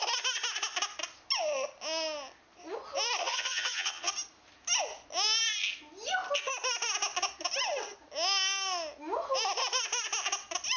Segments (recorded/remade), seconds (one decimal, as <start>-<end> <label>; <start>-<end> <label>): 0.0-3.2 recorded; 3.2-4.1 remade; 4.1-10.8 recorded